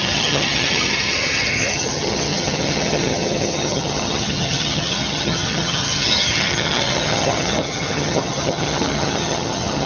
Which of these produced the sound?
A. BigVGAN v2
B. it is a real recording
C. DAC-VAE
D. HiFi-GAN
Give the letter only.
D